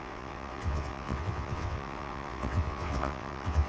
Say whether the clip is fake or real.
fake